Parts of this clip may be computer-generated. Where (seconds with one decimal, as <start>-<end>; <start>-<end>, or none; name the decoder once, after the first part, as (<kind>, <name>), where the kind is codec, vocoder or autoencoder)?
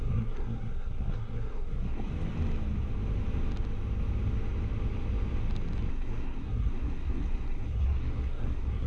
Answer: 0.0-2.1 (codec, SNAC); 5.9-8.9